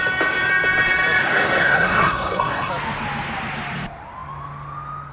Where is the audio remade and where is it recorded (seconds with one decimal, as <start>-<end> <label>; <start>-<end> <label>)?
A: 0.0-1.2 recorded; 1.2-2.7 remade; 2.7-5.1 recorded